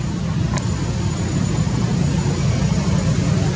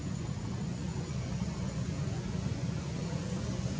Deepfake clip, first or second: second